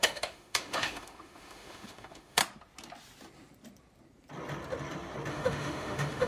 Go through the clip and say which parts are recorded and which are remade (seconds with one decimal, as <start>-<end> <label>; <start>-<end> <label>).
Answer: 0.0-2.4 remade; 2.4-5.3 recorded; 5.3-6.3 remade